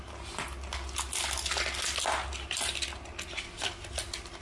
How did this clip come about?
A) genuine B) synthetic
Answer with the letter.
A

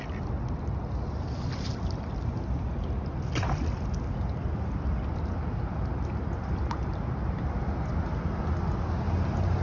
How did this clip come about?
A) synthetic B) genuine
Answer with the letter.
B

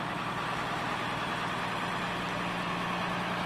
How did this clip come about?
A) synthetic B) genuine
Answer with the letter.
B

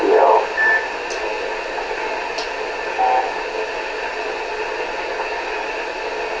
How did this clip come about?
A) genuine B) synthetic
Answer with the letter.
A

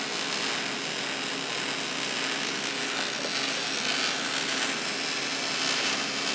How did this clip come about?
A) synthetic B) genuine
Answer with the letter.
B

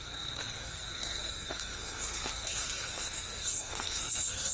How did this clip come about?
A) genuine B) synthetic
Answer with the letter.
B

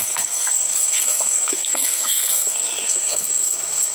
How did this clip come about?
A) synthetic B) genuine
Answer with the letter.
A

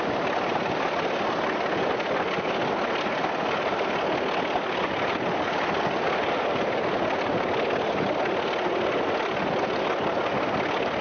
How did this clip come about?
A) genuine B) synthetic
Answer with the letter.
A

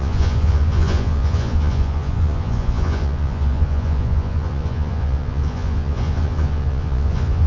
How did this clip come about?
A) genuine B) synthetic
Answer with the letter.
B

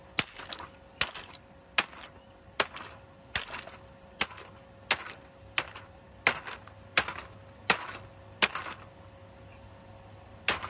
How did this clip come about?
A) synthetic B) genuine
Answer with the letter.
B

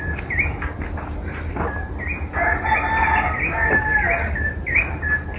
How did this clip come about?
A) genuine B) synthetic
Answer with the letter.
A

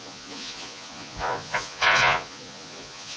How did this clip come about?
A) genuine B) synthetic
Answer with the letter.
B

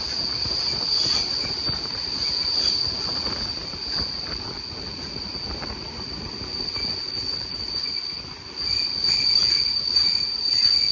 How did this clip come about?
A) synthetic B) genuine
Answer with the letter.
B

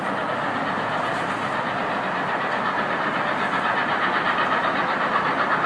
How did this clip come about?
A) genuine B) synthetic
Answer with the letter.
A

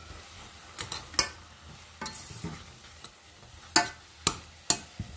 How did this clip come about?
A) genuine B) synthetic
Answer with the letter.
A